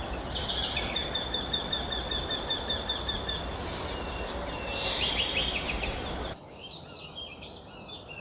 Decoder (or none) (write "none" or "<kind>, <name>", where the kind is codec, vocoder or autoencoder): none